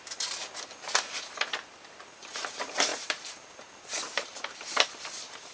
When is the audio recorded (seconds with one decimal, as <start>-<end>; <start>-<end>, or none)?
0.4-1.4